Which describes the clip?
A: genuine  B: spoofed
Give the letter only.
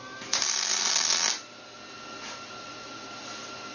A